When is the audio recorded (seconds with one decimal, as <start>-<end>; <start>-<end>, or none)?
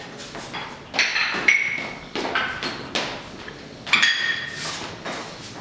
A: 0.0-5.6